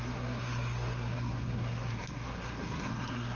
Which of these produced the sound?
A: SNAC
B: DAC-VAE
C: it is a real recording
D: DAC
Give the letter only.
A